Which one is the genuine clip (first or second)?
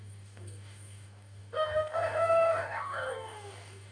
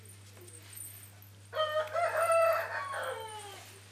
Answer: second